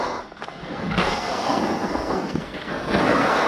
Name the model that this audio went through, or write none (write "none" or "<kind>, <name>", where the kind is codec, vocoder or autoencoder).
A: codec, SNAC